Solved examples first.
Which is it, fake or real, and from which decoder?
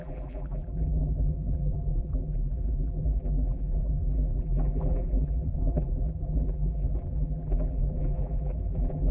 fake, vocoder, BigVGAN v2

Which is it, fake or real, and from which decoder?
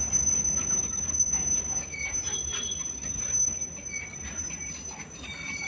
real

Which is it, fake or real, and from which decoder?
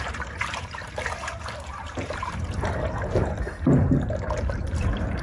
fake, vocoder, BigVGAN v2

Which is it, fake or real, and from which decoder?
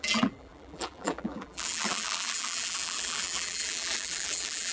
fake, vocoder, BigVGAN v2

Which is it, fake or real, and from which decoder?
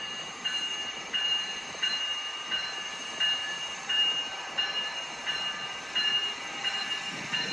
fake, vocoder, BigVGAN v2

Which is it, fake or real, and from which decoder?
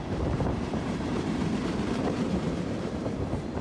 fake, vocoder, BigVGAN v2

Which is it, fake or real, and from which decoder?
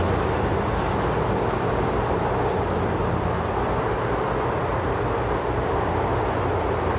real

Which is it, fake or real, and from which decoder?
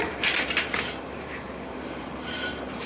fake, vocoder, BigVGAN v2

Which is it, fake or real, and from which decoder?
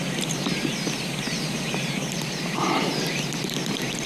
real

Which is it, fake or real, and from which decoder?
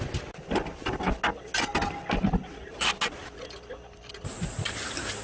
real